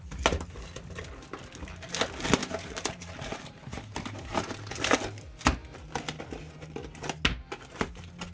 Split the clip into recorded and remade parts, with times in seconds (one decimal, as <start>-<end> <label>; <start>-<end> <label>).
0.0-2.4 recorded; 2.4-4.8 remade; 4.8-8.3 recorded